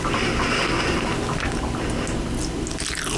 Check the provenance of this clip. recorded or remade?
recorded